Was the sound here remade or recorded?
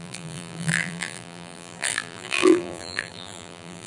remade